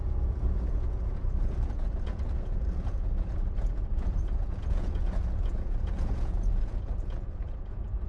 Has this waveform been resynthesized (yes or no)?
yes